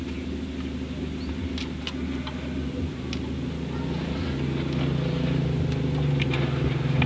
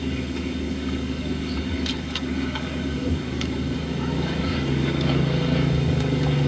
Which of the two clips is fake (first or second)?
second